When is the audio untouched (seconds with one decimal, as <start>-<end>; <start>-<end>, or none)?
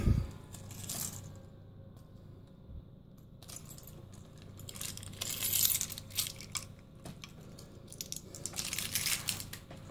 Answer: 0.0-9.9